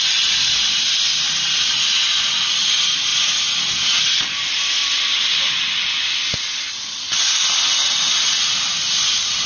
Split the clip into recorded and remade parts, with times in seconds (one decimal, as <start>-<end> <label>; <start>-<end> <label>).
0.0-9.5 recorded